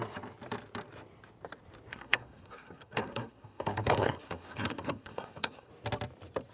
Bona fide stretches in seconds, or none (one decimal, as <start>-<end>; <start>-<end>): 0.0-1.9; 5.7-6.5